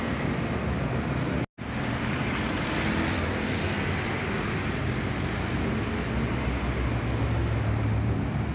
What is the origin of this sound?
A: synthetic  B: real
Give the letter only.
B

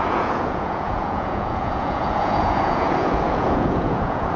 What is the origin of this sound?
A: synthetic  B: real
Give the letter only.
A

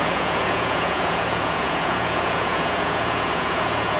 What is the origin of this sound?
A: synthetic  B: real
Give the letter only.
A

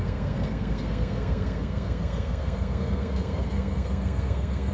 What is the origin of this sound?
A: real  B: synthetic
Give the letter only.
B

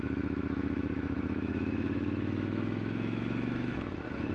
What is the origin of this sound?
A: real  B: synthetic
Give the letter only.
B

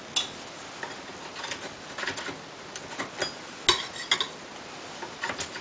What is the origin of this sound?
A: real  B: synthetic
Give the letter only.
A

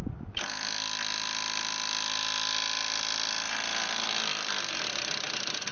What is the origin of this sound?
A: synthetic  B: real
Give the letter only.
A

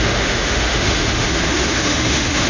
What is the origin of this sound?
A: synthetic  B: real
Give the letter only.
A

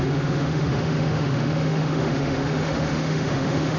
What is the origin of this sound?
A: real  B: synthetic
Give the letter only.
B